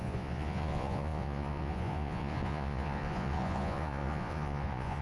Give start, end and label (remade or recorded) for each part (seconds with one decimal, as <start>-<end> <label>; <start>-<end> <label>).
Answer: 0.0-5.0 remade